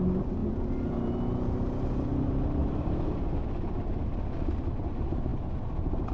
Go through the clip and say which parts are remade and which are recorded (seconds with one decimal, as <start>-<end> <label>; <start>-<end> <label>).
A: 0.0-2.6 recorded; 2.6-3.2 remade; 3.2-6.1 recorded